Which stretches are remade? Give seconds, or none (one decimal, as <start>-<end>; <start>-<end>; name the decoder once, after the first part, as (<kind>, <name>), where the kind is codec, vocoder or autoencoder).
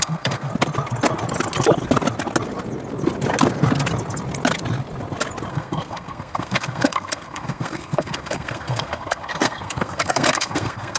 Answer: 0.0-0.5 (codec, SNAC); 5.5-11.0